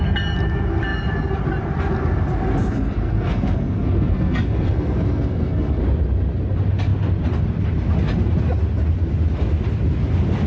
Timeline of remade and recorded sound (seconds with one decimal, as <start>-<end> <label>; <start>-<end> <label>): 0.0-2.6 recorded; 2.6-5.8 remade; 5.8-10.5 recorded